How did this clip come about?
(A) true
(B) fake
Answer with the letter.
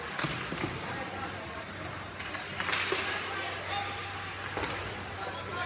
A